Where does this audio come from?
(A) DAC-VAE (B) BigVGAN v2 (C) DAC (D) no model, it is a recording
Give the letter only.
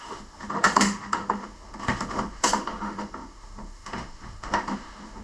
A